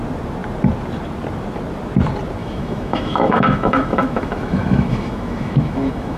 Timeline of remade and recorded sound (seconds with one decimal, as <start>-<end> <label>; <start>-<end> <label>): 0.0-2.4 recorded; 2.4-6.2 remade